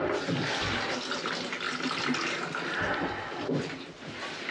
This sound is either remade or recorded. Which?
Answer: remade